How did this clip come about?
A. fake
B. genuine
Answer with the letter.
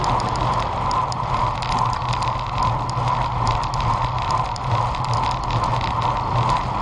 B